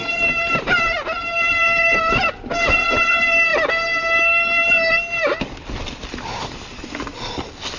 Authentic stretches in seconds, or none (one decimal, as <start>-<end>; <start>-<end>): 0.0-7.8